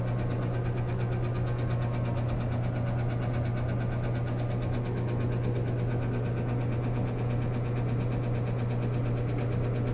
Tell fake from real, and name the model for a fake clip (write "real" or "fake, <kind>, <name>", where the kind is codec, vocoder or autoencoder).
real